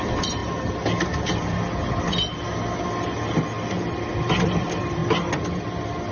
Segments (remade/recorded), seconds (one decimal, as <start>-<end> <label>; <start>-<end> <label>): 0.0-0.4 remade; 0.4-4.1 recorded; 4.1-5.0 remade; 5.0-6.1 recorded